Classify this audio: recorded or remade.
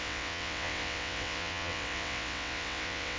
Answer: remade